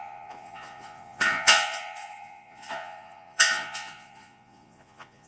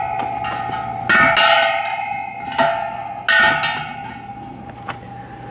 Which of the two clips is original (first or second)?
second